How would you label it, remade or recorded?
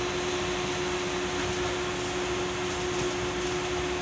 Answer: recorded